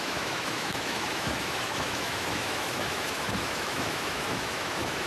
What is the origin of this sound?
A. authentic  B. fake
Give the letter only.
B